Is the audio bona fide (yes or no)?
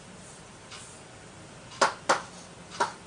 yes